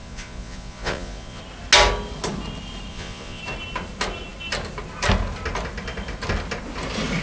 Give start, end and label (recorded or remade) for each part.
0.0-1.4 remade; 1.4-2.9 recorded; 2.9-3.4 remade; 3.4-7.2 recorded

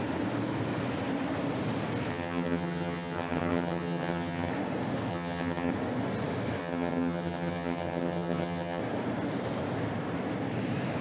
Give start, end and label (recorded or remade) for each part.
0.0-2.1 recorded; 2.1-4.5 remade; 4.5-5.1 recorded; 5.1-5.7 remade; 5.7-6.6 recorded; 6.6-8.8 remade; 8.8-11.0 recorded

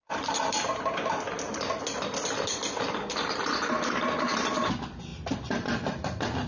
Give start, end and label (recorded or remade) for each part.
0.0-6.5 remade

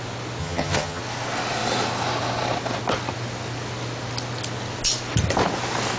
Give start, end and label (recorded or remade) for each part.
0.0-0.4 recorded; 0.4-1.0 remade; 1.0-6.0 recorded

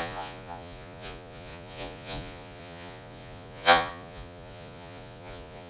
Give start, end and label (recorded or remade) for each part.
0.0-5.7 remade